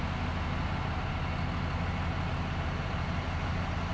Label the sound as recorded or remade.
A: recorded